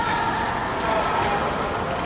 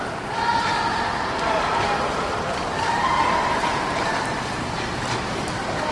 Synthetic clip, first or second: second